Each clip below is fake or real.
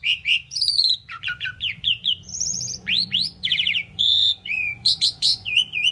fake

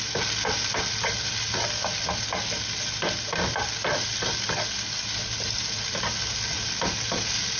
real